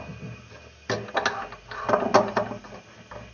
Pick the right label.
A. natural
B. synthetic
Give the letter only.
A